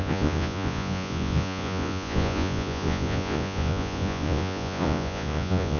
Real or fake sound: fake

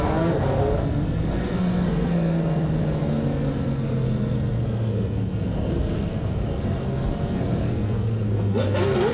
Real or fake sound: fake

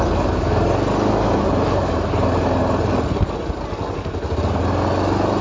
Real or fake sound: real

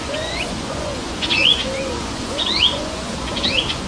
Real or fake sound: fake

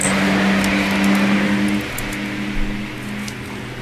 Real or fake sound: real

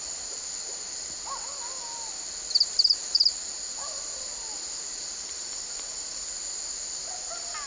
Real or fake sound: real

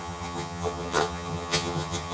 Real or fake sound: fake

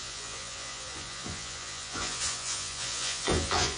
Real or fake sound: fake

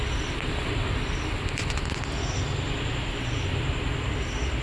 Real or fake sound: real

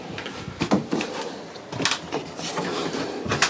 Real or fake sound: real